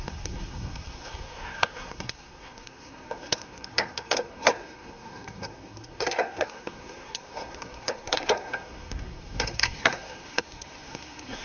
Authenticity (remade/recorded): remade